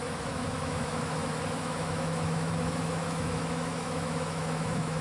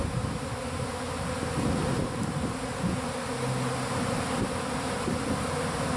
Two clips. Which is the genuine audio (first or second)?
second